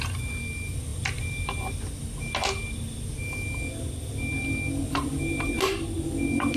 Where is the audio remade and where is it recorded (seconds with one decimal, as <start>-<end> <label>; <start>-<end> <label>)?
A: 0.0-4.8 recorded; 4.8-5.7 remade; 5.7-6.6 recorded

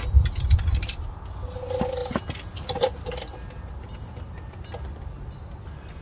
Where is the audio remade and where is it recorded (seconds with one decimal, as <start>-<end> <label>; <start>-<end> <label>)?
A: 0.0-6.0 recorded

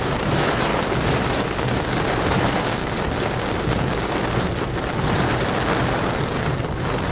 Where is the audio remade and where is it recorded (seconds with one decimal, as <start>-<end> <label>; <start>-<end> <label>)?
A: 0.0-0.7 remade; 0.7-2.2 recorded; 2.2-2.8 remade; 2.8-7.1 recorded

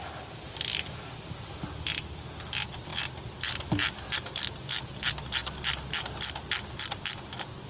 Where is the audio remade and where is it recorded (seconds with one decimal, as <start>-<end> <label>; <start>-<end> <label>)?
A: 0.0-7.7 recorded

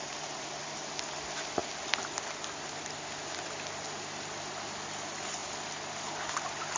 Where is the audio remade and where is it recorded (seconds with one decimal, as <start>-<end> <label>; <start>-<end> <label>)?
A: 0.0-5.4 remade; 5.4-6.8 recorded